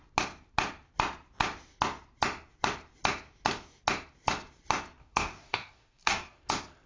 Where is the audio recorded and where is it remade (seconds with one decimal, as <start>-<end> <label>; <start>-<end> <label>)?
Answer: 0.0-5.0 recorded; 5.0-6.5 remade; 6.5-6.9 recorded